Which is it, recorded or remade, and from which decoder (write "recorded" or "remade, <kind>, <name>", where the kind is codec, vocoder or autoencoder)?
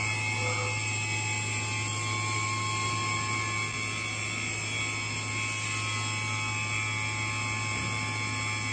recorded